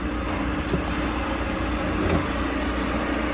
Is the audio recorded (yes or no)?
yes